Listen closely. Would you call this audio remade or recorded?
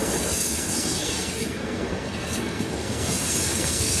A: remade